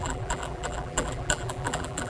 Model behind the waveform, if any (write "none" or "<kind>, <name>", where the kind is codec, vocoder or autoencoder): vocoder, BigVGAN v2